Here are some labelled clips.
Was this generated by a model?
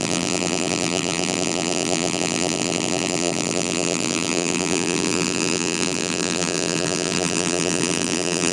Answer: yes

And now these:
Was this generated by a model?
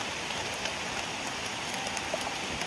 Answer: no